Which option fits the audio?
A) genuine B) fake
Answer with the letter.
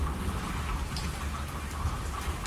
A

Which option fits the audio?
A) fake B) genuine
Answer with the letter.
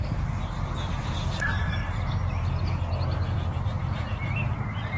B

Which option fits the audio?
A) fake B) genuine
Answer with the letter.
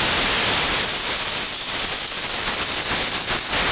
B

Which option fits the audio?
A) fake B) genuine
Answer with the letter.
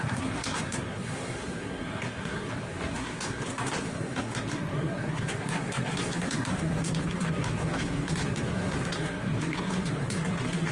A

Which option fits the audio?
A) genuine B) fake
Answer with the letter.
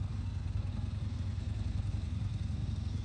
B